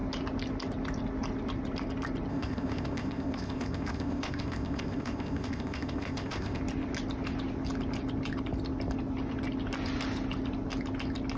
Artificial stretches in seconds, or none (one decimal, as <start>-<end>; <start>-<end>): 2.3-6.6